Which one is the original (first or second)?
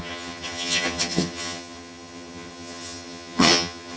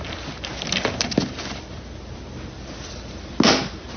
second